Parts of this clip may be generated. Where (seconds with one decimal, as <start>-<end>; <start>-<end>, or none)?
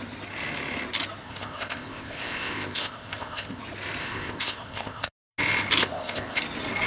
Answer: 1.2-3.6; 4.0-5.1; 5.8-6.4